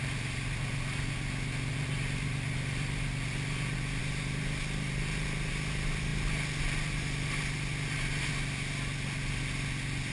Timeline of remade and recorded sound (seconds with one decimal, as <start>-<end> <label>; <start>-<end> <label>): 0.0-10.1 recorded